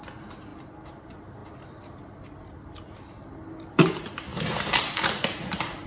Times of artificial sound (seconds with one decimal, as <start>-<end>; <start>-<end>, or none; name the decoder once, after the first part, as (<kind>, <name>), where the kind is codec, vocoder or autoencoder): 0.0-0.5 (vocoder, BigVGAN v2); 1.0-1.4; 3.7-5.9